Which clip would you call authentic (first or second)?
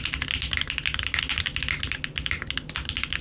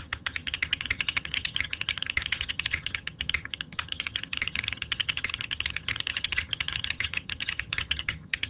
first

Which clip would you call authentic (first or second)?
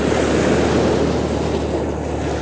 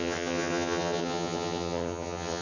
first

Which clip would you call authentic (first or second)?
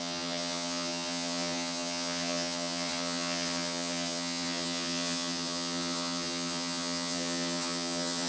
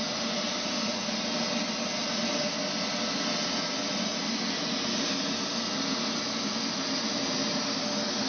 second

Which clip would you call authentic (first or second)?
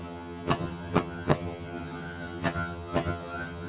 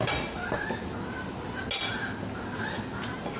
second